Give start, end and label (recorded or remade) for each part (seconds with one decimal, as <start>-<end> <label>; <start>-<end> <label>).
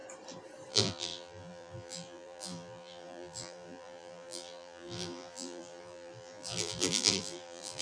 0.0-0.7 recorded; 0.7-7.8 remade